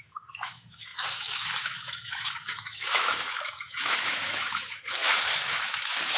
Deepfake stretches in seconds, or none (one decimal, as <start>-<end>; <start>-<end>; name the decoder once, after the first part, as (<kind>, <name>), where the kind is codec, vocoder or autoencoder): 0.0-6.2 (autoencoder, DAC-VAE)